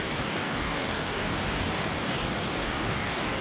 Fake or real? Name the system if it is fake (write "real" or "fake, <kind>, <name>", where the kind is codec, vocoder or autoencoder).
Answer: fake, codec, DAC